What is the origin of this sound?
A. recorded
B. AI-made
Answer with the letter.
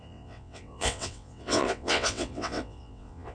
B